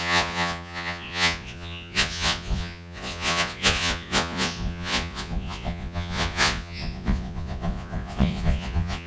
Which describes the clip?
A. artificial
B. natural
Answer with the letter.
A